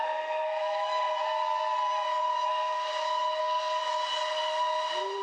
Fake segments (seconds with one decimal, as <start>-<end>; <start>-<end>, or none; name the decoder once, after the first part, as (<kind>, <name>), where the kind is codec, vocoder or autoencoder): 0.0-1.1 (codec, SNAC); 2.5-2.9; 3.4-3.8